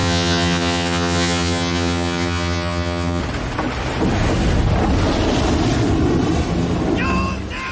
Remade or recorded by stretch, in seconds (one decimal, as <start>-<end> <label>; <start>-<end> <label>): 0.0-3.2 remade; 3.2-7.7 recorded